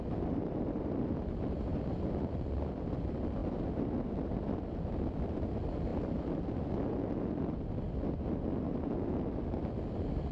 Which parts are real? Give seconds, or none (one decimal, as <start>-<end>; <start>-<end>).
0.0-10.3